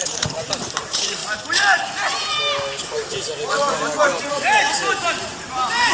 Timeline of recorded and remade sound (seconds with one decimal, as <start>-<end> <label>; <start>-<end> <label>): 0.0-1.2 remade; 1.2-4.3 recorded; 4.3-5.9 remade